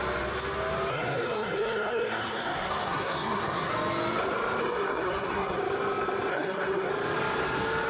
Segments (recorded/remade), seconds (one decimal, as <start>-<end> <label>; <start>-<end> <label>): 0.0-0.9 recorded; 0.9-3.7 remade; 3.7-4.6 recorded; 4.6-5.6 remade; 5.6-6.3 recorded; 6.3-6.9 remade; 6.9-7.9 recorded